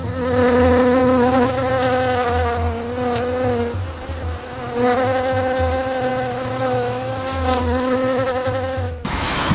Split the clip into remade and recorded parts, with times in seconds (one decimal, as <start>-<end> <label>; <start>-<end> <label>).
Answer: 0.0-1.0 recorded; 1.0-1.7 remade; 1.7-6.1 recorded; 6.1-9.5 remade